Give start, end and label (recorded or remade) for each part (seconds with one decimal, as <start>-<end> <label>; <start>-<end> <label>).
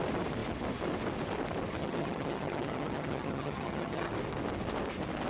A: 0.0-1.8 recorded; 1.8-4.1 remade; 4.1-5.3 recorded